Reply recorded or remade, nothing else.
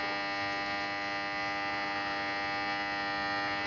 recorded